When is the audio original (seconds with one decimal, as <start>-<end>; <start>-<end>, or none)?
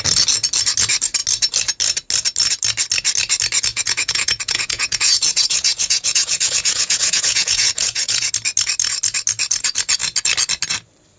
0.0-3.7; 8.3-11.2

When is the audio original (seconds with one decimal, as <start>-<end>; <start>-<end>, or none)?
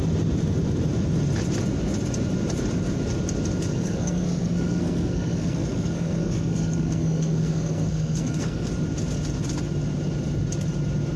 0.0-3.7; 8.7-11.2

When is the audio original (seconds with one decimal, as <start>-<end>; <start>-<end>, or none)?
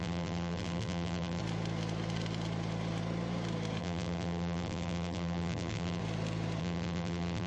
1.4-3.8; 6.0-6.6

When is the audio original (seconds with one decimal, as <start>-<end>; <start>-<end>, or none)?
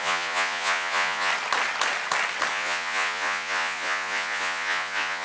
1.3-2.5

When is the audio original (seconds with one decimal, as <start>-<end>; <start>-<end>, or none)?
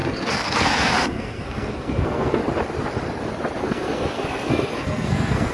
2.4-3.6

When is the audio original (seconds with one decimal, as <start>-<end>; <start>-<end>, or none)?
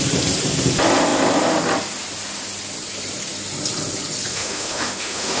0.0-4.3